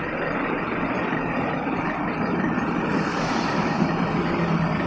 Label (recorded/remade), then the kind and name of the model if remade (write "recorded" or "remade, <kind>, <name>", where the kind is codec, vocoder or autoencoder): remade, vocoder, BigVGAN v2